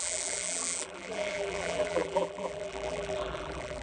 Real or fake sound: fake